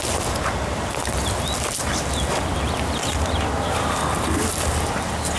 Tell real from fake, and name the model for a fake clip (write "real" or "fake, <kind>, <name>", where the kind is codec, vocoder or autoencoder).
real